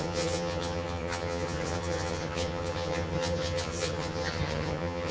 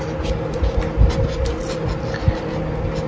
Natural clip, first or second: second